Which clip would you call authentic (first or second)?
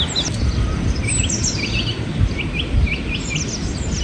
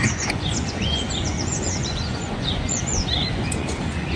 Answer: first